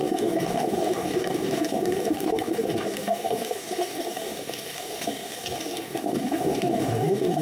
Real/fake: fake